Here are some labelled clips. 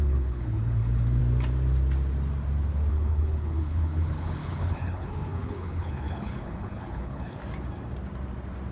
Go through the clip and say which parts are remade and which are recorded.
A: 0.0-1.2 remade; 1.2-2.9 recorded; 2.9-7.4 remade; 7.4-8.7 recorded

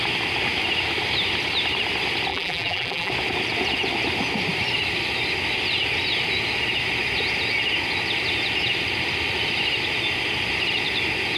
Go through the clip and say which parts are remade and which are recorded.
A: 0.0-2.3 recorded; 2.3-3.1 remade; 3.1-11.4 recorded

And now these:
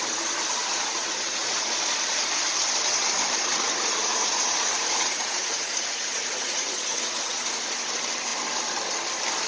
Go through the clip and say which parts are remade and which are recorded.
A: 0.0-0.6 recorded; 0.6-1.7 remade; 1.7-3.5 recorded; 3.5-7.7 remade; 7.7-9.5 recorded

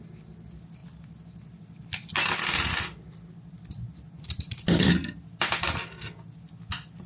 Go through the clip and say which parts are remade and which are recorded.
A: 0.0-7.1 recorded

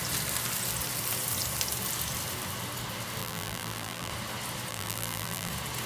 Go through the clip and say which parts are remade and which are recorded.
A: 0.0-3.2 recorded; 3.2-4.1 remade; 4.1-4.7 recorded; 4.7-5.5 remade; 5.5-5.9 recorded